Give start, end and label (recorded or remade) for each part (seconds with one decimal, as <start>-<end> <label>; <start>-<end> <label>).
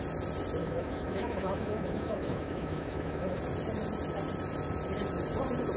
0.0-0.6 recorded; 0.6-3.4 remade; 3.4-5.8 recorded